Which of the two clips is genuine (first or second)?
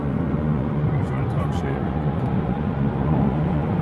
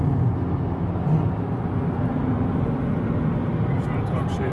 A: second